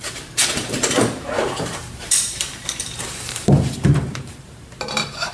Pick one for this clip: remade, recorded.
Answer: remade